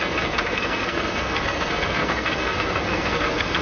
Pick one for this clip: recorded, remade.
remade